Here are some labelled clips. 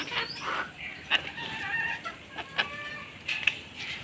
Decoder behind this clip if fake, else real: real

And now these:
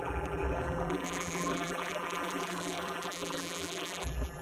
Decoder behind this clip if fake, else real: fake, vocoder, BigVGAN v2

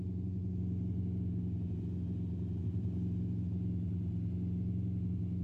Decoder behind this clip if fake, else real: real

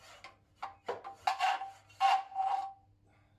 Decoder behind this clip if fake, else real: real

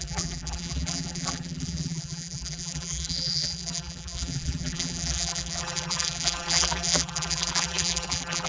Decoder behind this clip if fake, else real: fake, vocoder, BigVGAN v2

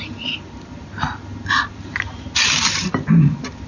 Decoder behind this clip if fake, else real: real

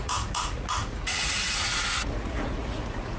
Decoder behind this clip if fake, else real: fake, vocoder, Vocos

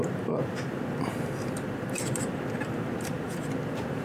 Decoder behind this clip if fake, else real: real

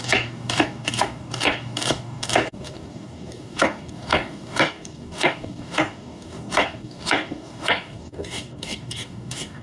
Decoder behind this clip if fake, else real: fake, codec, DAC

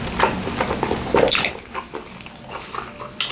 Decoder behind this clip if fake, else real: real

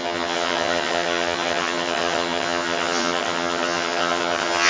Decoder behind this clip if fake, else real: fake, vocoder, HiFi-GAN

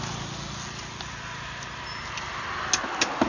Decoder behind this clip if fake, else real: real